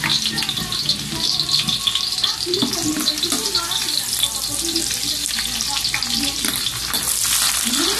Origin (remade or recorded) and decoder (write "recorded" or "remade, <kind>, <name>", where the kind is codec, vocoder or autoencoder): recorded